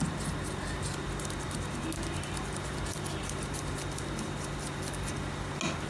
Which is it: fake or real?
real